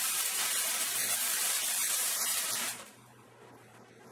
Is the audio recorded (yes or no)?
no